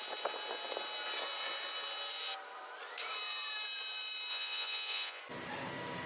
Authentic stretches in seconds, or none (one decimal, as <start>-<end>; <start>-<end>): 0.0-4.3; 5.2-6.1